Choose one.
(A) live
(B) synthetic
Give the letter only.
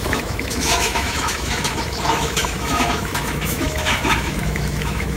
B